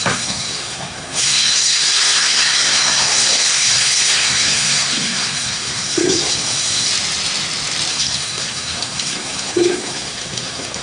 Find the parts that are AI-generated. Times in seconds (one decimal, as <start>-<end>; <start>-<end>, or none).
0.0-6.9; 7.9-10.8